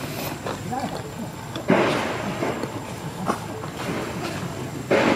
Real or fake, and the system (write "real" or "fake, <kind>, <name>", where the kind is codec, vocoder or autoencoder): real